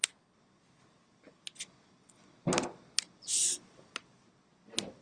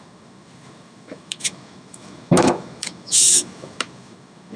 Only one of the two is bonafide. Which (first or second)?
first